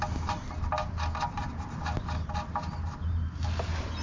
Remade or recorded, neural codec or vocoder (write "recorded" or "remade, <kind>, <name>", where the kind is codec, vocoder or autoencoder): recorded